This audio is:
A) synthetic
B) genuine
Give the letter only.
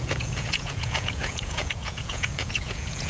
A